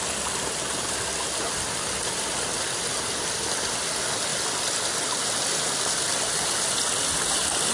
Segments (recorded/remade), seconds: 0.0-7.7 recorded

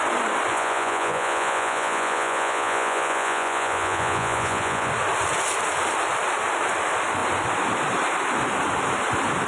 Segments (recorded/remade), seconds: 0.0-0.5 recorded; 0.5-4.9 remade; 4.9-9.5 recorded